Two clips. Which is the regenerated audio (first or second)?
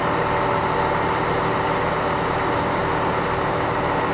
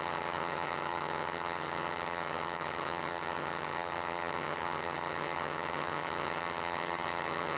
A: second